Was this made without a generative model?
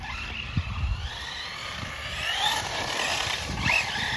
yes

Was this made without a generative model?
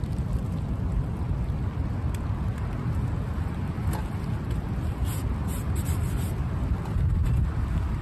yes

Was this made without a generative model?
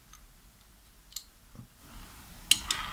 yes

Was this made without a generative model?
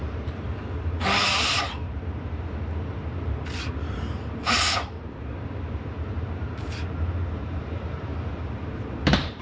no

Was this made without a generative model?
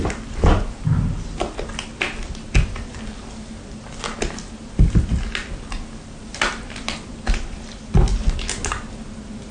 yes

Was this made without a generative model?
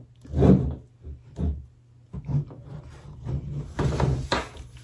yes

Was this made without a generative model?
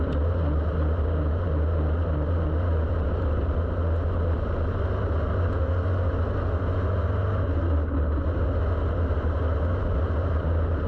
yes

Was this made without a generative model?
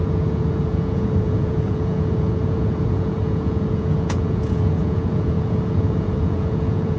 no